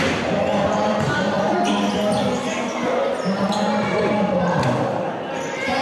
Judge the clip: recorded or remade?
recorded